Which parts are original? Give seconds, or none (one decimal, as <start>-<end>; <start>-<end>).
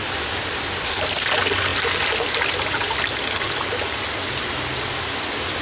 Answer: 0.0-5.6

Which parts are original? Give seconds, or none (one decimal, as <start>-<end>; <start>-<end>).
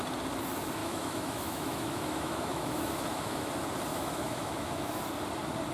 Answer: 0.0-0.8; 3.5-3.9; 5.0-5.7